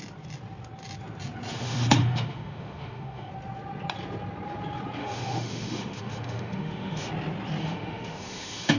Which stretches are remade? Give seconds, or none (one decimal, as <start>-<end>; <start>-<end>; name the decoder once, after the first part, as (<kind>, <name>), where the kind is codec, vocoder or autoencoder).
1.5-3.3 (autoencoder, DAC-VAE); 5.0-7.1; 7.6-8.8